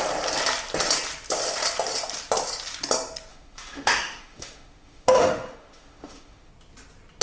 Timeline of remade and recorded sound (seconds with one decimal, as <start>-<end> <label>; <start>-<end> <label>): 0.0-3.3 recorded; 3.3-6.5 remade; 6.5-7.2 recorded